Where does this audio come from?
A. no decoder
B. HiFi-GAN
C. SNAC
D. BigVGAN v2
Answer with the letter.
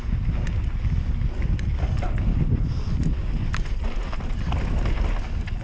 A